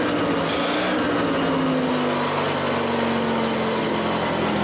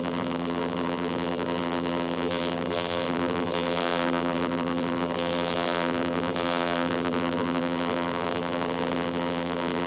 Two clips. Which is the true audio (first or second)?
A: first